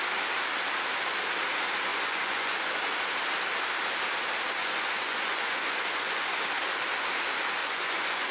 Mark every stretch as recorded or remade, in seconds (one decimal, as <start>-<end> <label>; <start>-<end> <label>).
0.0-1.9 recorded; 1.9-2.7 remade; 2.7-4.6 recorded; 4.6-6.4 remade; 6.4-7.6 recorded; 7.6-8.3 remade